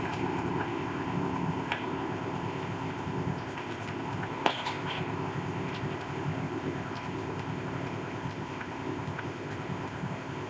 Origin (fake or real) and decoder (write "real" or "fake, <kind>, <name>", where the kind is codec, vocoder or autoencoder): fake, codec, ZipCodec